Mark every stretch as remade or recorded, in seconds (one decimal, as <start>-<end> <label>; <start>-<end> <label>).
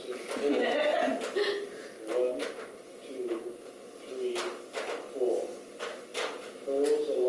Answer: 0.0-7.3 recorded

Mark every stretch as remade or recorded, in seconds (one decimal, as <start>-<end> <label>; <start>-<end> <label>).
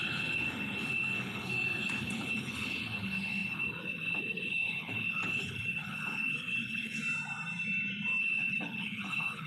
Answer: 0.0-7.0 remade; 7.0-8.2 recorded; 8.2-9.5 remade